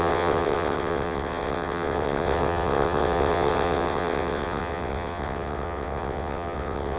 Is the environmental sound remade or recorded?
remade